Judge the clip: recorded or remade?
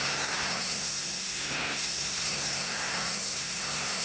remade